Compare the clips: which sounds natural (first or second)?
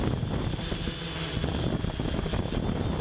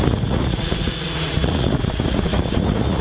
first